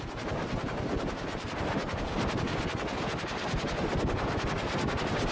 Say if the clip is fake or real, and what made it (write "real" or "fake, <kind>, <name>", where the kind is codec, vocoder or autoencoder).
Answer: real